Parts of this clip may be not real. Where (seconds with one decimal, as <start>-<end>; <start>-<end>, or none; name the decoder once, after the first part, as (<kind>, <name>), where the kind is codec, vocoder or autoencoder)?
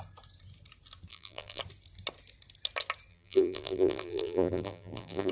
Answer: 1.1-1.6 (vocoder, BigVGAN v2); 3.1-5.3